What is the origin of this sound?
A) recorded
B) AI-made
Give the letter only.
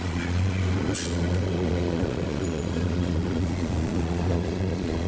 B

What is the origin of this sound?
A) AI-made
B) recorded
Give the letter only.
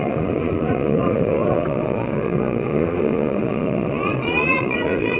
A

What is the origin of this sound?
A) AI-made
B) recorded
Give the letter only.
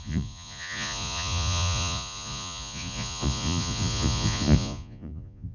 A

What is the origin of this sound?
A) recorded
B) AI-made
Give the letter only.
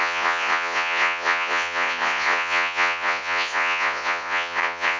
B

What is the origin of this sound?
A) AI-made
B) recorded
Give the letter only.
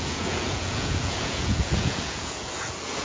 A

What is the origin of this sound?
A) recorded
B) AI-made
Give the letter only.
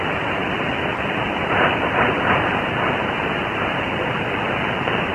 A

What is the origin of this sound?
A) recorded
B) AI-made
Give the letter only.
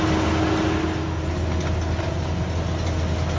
A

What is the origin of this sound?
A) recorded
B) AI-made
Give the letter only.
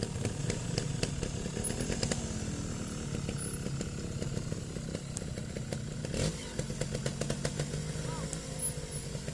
A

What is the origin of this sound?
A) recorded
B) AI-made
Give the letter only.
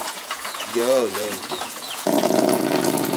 B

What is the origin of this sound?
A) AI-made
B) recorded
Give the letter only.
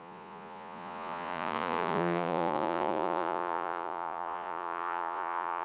A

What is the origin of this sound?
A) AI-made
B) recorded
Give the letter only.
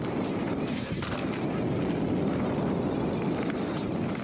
B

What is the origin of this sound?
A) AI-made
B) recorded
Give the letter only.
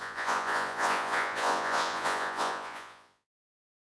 A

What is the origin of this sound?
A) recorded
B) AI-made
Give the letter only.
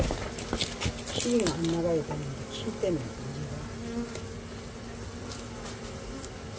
A